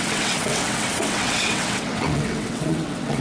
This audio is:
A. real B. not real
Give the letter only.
B